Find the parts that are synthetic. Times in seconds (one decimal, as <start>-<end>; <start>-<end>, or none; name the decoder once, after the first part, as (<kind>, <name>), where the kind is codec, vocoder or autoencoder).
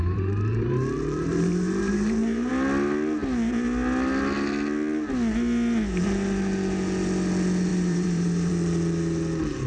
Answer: 0.0-2.5 (vocoder, BigVGAN v2); 7.7-8.5